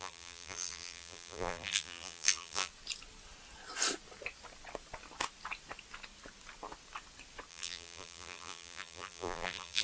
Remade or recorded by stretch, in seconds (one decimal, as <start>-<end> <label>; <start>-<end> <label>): 0.0-2.7 remade; 2.7-7.5 recorded; 7.5-9.8 remade